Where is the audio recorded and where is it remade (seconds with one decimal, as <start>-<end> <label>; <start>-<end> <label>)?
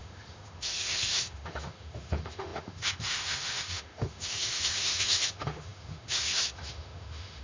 0.0-7.4 remade